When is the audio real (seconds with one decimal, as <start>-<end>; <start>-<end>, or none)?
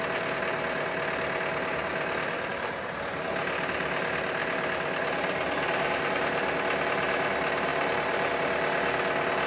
0.0-1.9; 2.5-4.4; 5.9-7.7; 8.3-9.5